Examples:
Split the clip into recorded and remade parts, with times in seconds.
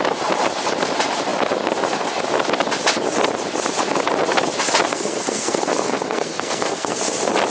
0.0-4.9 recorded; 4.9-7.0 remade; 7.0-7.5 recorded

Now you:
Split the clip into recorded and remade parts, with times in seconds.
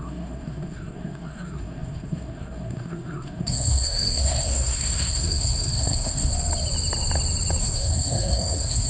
0.0-6.3 remade; 6.3-7.6 recorded; 7.6-8.9 remade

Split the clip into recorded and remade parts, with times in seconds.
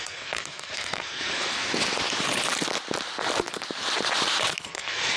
0.0-1.7 remade; 1.7-4.6 recorded; 4.6-5.2 remade